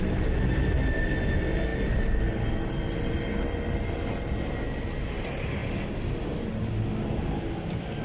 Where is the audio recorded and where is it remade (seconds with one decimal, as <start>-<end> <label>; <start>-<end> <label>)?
0.0-8.0 recorded